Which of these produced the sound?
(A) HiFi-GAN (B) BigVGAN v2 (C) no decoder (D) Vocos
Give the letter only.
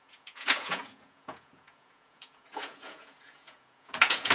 D